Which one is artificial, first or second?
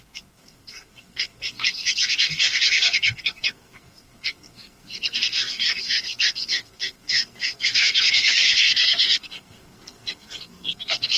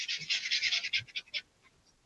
first